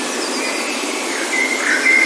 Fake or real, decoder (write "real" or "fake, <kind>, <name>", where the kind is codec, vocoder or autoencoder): real